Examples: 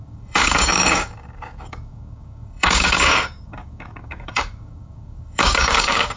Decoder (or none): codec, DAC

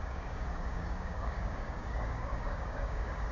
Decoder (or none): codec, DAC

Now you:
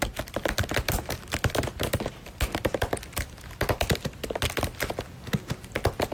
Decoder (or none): none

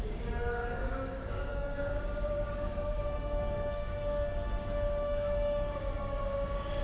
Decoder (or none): codec, DAC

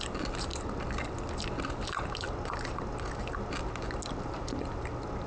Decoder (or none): none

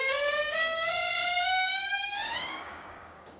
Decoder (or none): codec, DAC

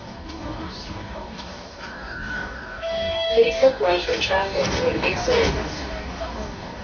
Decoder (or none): codec, DAC